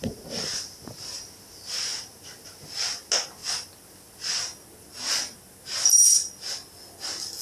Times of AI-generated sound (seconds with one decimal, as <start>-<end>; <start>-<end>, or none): none